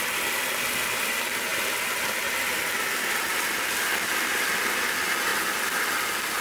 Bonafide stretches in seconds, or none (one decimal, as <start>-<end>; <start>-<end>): 0.0-6.4